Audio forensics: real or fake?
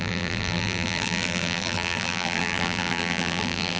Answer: fake